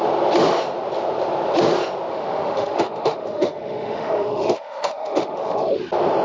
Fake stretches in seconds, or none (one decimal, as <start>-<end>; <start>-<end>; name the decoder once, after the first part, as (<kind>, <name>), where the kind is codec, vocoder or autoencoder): 2.1-5.8 (autoencoder, DAC-VAE)